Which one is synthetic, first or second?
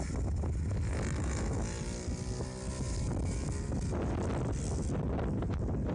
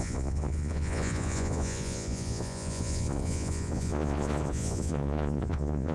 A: second